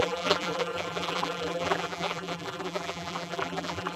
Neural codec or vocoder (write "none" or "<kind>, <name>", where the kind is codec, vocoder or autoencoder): vocoder, BigVGAN v2